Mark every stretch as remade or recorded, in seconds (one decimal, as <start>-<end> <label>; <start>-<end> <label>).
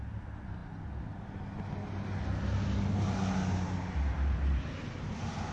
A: 0.0-5.5 recorded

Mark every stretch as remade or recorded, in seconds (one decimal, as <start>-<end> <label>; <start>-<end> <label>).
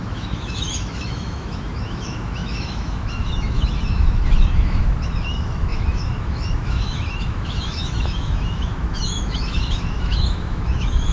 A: 0.0-11.1 remade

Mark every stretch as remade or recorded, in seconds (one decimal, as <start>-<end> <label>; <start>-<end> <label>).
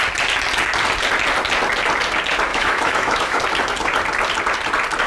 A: 0.0-2.5 recorded; 2.5-3.4 remade; 3.4-5.1 recorded